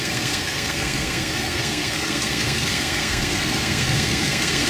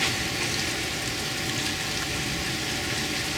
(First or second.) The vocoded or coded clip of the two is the first